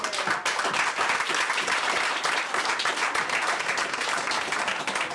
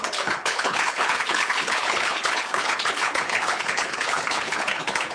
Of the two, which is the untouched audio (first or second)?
first